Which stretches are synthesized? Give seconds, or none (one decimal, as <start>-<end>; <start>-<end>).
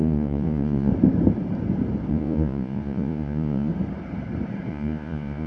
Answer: 0.0-0.9; 2.1-3.7; 4.7-5.5